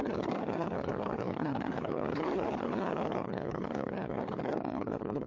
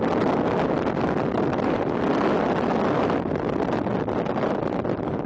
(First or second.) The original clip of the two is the second